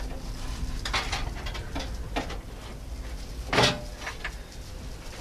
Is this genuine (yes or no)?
yes